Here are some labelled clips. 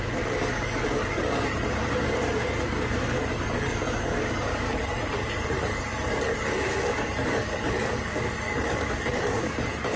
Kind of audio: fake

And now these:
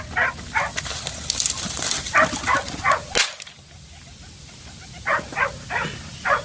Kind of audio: real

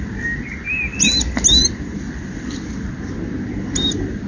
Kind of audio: real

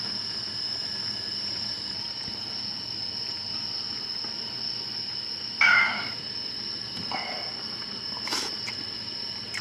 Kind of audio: real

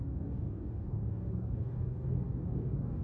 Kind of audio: fake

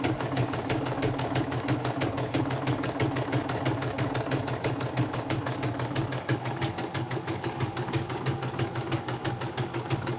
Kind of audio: fake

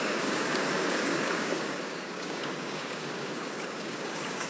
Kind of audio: fake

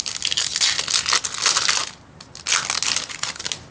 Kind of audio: real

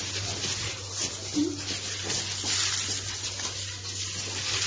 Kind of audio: real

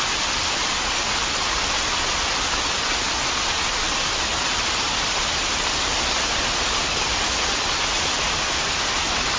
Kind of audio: real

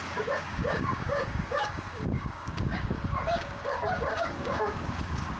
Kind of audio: fake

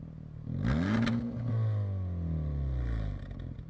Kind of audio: real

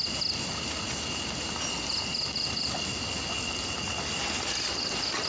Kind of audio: real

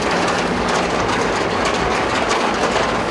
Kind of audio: fake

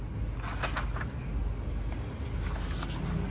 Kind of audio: real